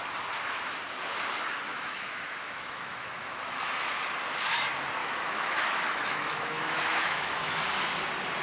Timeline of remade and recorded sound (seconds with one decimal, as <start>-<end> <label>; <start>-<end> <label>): 0.0-1.7 recorded; 1.7-3.7 remade; 3.7-5.0 recorded; 5.0-7.6 remade; 7.6-8.4 recorded